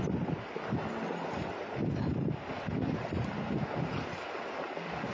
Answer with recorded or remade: recorded